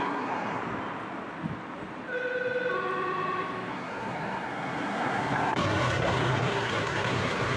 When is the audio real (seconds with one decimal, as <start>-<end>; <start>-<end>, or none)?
0.6-3.7